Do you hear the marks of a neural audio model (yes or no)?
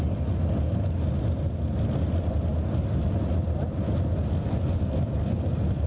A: no